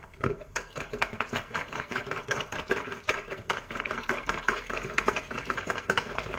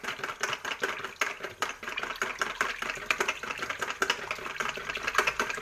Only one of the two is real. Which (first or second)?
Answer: second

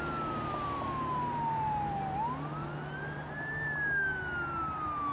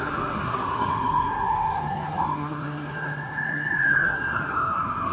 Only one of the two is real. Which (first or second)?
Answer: first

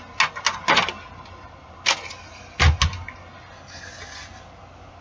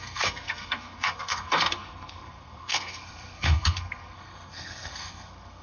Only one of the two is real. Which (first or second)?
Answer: first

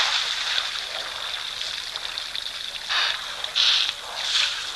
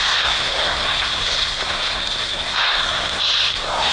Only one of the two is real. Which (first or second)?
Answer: first